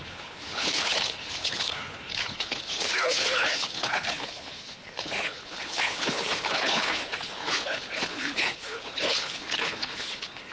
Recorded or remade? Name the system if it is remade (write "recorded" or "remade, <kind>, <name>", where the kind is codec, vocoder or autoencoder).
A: remade, codec, HILCodec